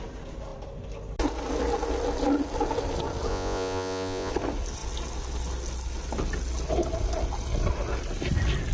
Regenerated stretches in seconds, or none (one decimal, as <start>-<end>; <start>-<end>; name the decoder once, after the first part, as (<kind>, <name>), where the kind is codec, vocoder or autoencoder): 3.3-4.3 (vocoder, Vocos)